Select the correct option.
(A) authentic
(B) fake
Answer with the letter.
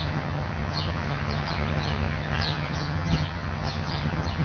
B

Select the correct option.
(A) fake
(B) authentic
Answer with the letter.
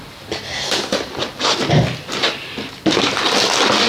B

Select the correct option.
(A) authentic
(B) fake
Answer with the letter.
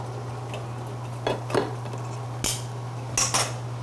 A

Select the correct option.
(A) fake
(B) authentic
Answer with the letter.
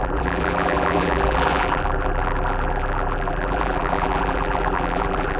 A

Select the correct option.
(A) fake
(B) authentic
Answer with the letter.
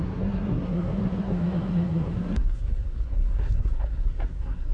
A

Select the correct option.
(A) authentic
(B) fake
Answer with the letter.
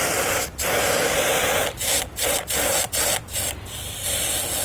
A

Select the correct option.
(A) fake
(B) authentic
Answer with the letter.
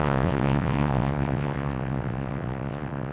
A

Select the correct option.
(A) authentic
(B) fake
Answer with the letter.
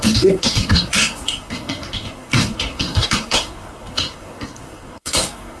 B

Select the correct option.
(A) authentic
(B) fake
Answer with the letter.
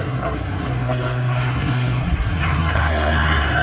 B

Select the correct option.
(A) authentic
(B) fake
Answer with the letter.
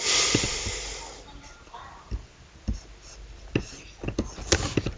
A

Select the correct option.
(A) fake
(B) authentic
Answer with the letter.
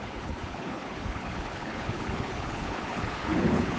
A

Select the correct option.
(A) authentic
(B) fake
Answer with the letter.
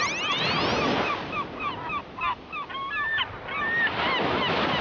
A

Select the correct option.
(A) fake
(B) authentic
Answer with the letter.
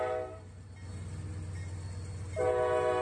B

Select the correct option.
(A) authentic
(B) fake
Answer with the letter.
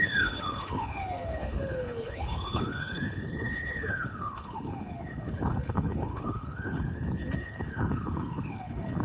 B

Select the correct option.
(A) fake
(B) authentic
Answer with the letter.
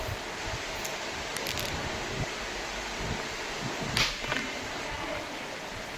B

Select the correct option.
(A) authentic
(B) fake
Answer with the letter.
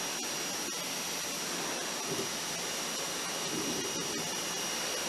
A